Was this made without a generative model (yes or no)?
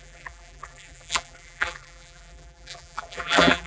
no